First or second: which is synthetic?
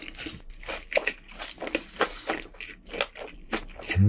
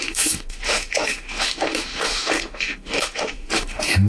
second